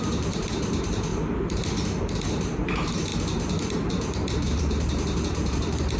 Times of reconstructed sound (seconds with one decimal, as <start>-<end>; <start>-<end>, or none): 0.0-1.1; 2.3-3.1; 4.6-6.0